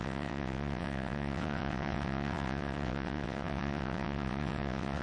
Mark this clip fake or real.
fake